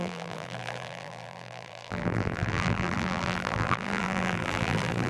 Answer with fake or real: fake